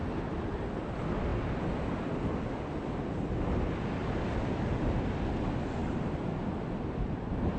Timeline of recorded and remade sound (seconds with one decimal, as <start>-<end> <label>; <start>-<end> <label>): 0.0-7.6 recorded